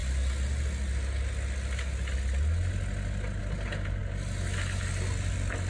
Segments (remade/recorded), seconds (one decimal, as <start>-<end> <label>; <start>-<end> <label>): 0.0-5.7 recorded